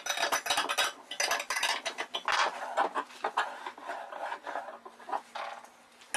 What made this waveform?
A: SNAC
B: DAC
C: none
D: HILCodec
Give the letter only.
C